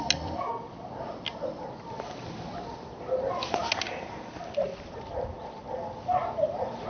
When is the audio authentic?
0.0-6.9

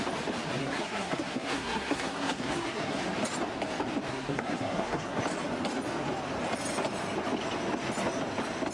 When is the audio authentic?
0.0-0.6; 3.0-4.1; 5.2-8.7